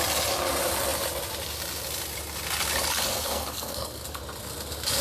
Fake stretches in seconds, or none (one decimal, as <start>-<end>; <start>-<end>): 3.1-4.2